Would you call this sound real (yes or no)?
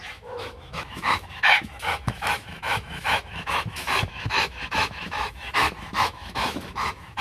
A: no